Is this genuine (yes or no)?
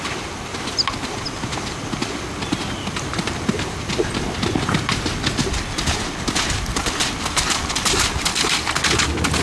yes